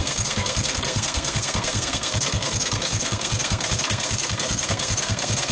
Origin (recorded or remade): remade